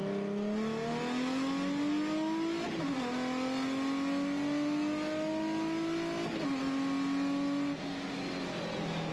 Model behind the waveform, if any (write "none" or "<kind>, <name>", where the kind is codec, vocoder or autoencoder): none